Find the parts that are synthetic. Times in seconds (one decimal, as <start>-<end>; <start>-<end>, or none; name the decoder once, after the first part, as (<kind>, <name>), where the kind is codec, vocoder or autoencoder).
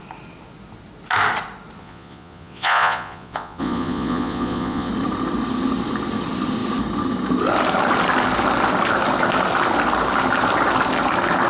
1.8-4.9 (vocoder, Vocos)